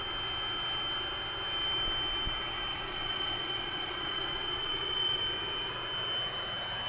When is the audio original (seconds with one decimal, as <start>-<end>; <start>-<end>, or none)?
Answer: 0.0-2.7; 5.2-6.9